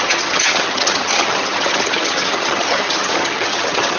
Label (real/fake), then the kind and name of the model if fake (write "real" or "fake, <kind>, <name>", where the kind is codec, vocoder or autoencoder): fake, vocoder, HiFi-GAN